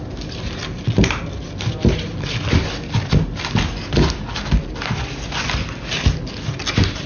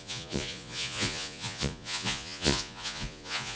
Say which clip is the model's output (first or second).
second